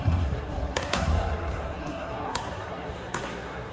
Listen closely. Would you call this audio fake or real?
fake